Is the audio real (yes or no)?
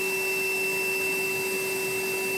yes